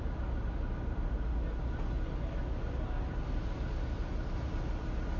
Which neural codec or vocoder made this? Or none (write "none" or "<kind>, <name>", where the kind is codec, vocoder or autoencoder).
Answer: none